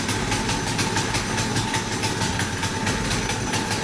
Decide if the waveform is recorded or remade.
recorded